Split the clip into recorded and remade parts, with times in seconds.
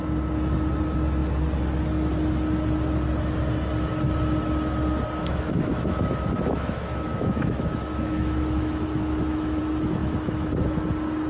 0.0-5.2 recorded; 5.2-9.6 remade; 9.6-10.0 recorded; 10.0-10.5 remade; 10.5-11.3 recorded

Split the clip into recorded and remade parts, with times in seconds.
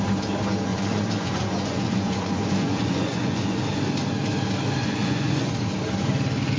0.0-0.7 recorded; 0.7-3.6 remade; 3.6-4.8 recorded; 4.8-5.5 remade; 5.5-6.6 recorded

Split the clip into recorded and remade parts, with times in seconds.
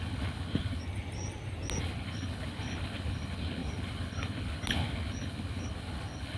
0.0-0.8 remade; 0.8-1.8 recorded; 1.8-6.4 remade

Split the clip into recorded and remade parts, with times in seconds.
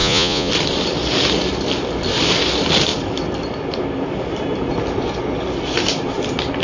0.0-0.5 remade; 0.5-6.6 recorded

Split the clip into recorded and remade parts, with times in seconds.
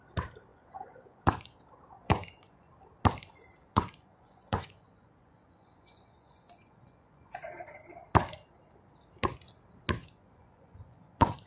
0.0-0.5 recorded; 0.5-1.6 remade; 1.6-2.0 recorded; 2.0-2.7 remade; 2.7-3.6 recorded; 3.6-7.4 remade; 7.4-10.0 recorded; 10.0-11.5 remade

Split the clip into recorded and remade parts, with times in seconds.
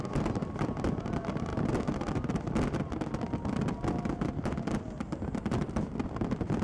0.0-1.5 remade; 1.5-5.4 recorded; 5.4-6.6 remade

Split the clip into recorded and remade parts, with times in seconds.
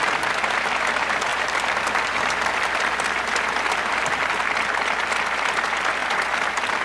0.0-1.3 recorded; 1.3-4.3 remade; 4.3-6.0 recorded; 6.0-6.8 remade